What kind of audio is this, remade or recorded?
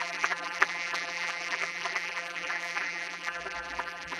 remade